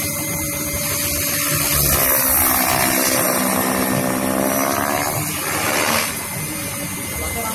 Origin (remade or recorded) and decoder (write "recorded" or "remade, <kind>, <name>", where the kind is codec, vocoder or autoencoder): recorded